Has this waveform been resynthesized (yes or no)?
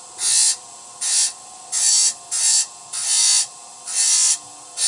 no